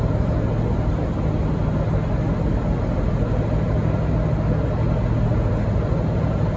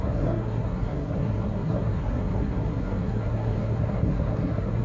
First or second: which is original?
first